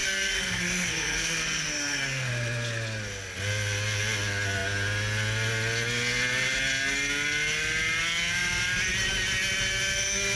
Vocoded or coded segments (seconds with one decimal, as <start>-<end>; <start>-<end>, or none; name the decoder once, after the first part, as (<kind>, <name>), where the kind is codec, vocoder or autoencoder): 0.0-2.3 (codec, SNAC)

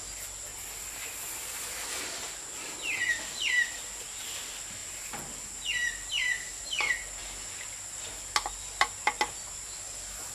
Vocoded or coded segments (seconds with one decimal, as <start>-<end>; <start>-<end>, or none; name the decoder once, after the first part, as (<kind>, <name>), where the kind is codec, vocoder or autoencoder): none

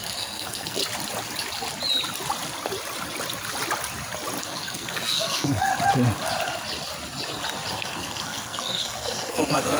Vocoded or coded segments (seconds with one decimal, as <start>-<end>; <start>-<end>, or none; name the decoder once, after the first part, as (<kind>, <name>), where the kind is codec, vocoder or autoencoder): 0.0-0.8 (codec, SNAC); 4.4-5.7; 7.7-9.8

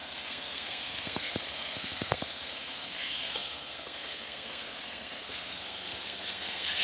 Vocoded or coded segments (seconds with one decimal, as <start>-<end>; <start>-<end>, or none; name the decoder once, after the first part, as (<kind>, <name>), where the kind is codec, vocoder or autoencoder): 0.0-6.8 (codec, SNAC)

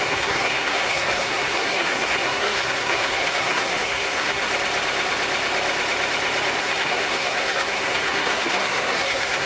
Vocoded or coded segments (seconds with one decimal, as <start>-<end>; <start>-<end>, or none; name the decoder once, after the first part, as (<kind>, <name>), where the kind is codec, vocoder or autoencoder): 0.0-4.4 (codec, SNAC); 6.6-9.5

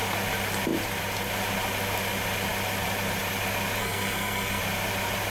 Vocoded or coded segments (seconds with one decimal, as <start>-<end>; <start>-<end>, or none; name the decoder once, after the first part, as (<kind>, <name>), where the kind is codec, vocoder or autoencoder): 3.8-4.6 (codec, SNAC)

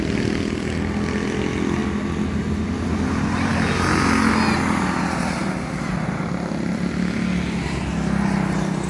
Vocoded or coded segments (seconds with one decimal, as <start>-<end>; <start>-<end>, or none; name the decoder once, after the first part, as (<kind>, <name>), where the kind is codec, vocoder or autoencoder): none

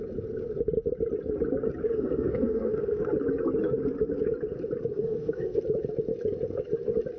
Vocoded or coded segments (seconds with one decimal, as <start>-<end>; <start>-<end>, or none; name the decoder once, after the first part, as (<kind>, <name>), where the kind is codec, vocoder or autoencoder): 1.8-3.0 (codec, SNAC); 4.9-5.6